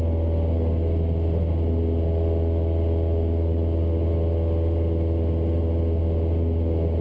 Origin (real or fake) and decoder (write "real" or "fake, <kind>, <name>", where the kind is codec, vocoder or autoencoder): real